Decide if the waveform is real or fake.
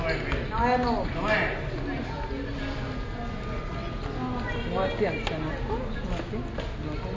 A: real